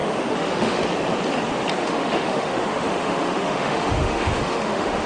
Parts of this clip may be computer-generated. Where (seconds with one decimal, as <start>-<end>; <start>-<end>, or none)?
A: 0.0-0.8; 1.8-5.1